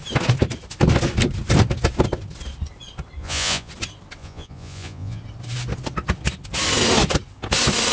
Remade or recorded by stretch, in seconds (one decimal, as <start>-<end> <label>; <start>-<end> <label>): 0.0-3.2 recorded; 3.2-3.7 remade; 3.7-4.2 recorded; 4.2-5.2 remade; 5.2-7.9 recorded